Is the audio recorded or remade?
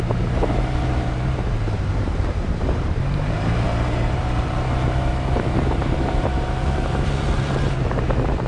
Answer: remade